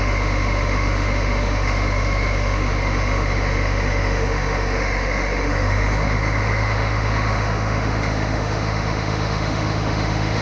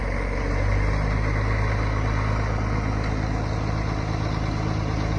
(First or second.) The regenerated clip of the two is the first